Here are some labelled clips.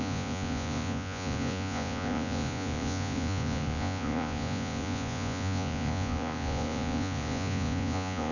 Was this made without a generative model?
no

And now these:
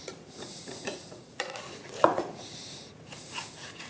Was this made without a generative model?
no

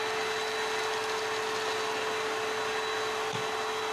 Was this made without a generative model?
yes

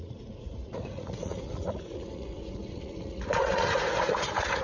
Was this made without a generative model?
no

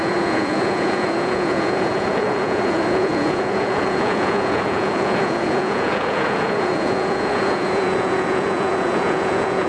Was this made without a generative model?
no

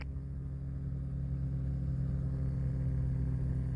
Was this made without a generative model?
yes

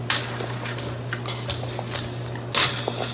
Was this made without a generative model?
yes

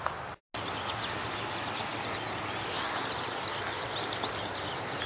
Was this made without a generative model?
yes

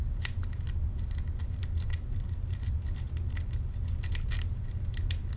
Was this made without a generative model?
yes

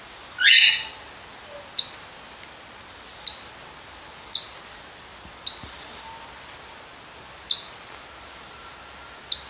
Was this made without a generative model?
yes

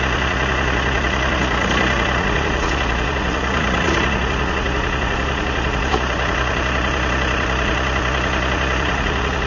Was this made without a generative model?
no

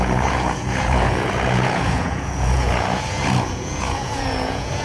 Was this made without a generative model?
no